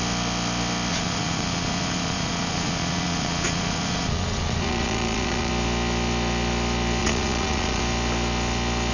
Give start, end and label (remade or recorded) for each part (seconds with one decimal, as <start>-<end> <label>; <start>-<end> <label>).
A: 0.0-0.9 recorded; 0.9-5.5 remade; 5.5-7.0 recorded; 7.0-7.8 remade; 7.8-8.9 recorded